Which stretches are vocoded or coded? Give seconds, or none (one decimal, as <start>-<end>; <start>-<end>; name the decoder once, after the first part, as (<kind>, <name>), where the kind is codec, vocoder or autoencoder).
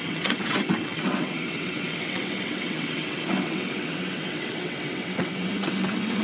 0.0-6.2 (vocoder, WaveNeXt)